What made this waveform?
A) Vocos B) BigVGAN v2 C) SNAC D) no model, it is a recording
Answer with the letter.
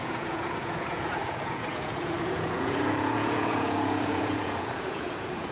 A